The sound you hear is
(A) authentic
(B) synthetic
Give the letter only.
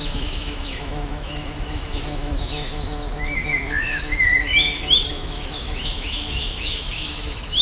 B